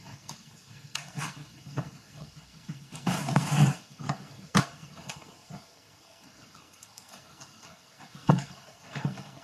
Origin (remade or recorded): remade